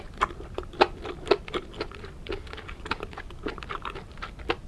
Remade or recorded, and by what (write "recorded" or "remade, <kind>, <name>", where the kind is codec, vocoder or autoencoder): remade, vocoder, BigVGAN v2